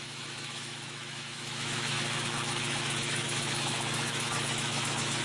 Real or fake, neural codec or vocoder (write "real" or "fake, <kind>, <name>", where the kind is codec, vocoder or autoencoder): fake, autoencoder, DAC-VAE